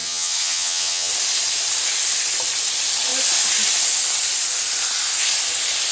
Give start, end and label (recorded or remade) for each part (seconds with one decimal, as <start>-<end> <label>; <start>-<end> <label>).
0.0-1.1 remade; 1.1-5.9 recorded